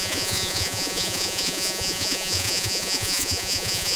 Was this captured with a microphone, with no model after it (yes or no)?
no